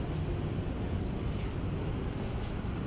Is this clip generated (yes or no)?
no